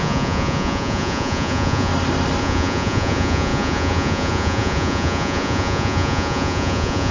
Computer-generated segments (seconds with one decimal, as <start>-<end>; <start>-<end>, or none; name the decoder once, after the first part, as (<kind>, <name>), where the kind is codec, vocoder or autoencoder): 0.0-1.9 (vocoder, Vocos); 2.4-7.1